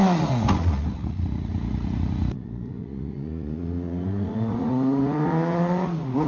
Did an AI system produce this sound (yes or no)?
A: yes